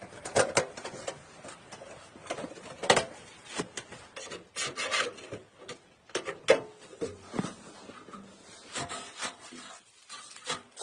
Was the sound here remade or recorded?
recorded